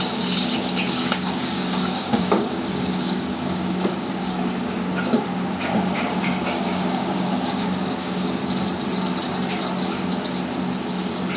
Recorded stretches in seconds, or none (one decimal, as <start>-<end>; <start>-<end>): 8.4-11.4